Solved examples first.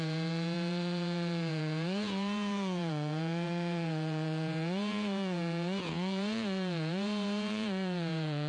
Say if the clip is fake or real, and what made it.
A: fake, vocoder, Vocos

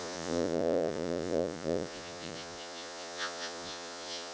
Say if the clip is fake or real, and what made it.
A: fake, vocoder, Vocos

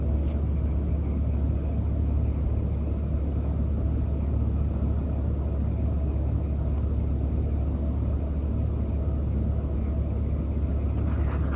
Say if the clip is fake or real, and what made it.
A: real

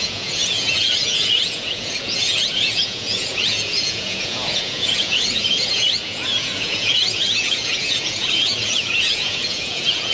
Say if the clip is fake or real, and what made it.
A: fake, vocoder, Vocos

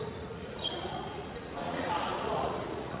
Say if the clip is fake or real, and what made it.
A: fake, vocoder, Vocos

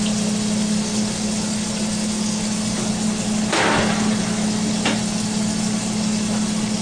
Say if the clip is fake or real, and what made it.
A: real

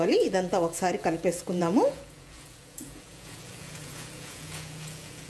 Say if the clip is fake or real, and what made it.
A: fake, vocoder, Vocos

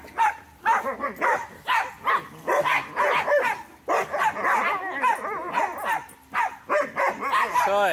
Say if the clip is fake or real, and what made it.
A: real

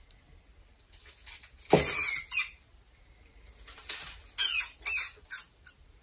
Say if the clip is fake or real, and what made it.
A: real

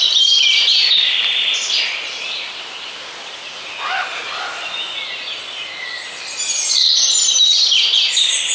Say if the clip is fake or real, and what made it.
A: real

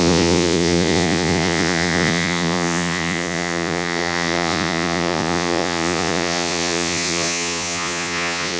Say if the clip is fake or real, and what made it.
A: fake, vocoder, Vocos